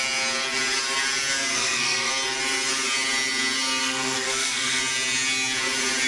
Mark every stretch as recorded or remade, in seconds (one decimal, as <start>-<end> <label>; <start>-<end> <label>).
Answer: 0.0-1.5 recorded; 1.5-2.1 remade; 2.1-3.8 recorded; 3.8-4.8 remade; 4.8-6.1 recorded